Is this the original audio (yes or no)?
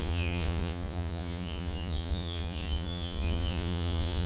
no